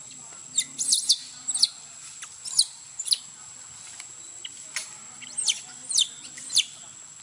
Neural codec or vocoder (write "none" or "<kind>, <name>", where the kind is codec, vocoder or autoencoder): none